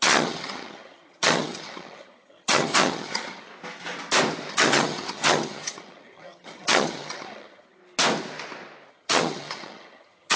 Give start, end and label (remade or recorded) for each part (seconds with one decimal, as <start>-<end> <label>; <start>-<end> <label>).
0.0-3.5 remade; 3.5-4.5 recorded; 4.5-7.8 remade; 7.8-8.9 recorded; 8.9-10.4 remade